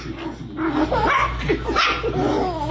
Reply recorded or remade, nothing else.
recorded